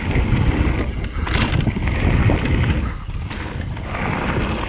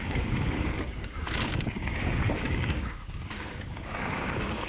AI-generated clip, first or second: second